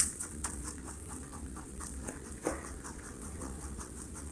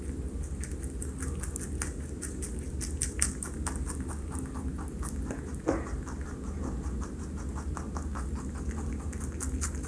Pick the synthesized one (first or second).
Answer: first